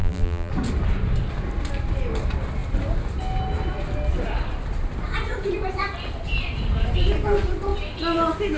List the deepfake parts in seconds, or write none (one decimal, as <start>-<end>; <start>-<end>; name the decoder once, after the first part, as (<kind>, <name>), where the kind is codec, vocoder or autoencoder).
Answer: 0.0-0.5 (vocoder, BigVGAN v2)